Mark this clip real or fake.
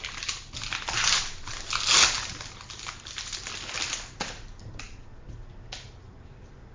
real